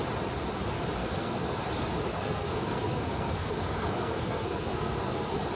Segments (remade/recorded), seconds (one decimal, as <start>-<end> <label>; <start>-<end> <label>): 0.0-1.0 recorded; 1.0-1.5 remade; 1.5-2.1 recorded; 2.1-5.5 remade